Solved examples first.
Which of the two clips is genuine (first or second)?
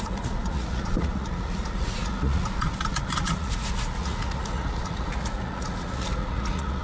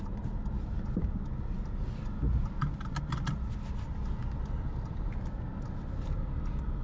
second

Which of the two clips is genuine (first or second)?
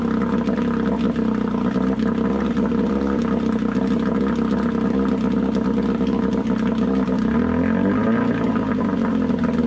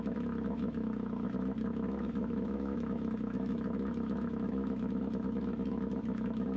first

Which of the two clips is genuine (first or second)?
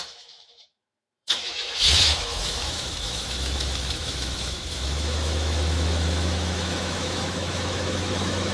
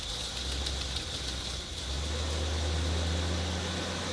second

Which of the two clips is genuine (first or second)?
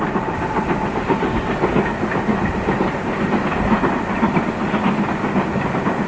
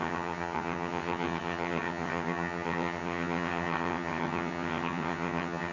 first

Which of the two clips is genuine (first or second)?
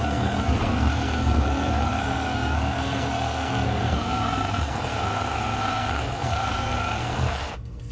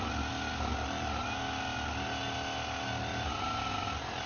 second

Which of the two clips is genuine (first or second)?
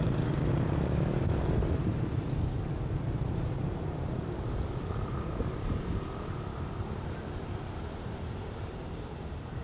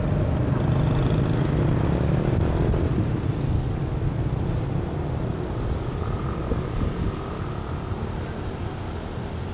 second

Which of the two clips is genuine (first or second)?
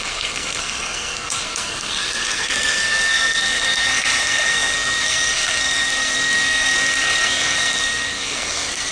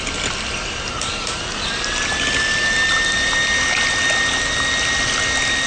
second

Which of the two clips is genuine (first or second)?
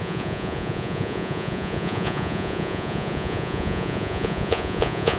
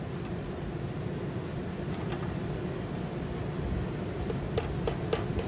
second